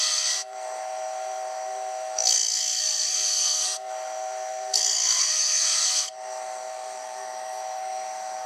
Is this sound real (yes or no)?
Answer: no